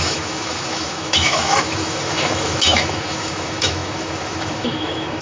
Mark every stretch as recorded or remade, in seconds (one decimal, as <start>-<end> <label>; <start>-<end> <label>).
0.0-5.2 remade